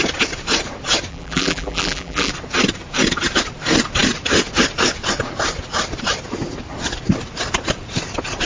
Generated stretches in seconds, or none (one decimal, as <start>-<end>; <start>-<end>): 1.1-2.3